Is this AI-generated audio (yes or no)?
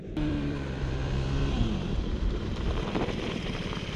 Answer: yes